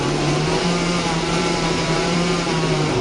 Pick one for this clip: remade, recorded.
remade